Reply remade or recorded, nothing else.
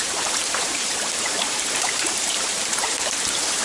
remade